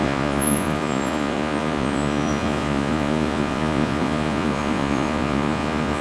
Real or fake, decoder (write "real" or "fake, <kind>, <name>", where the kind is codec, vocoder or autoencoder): fake, vocoder, Vocos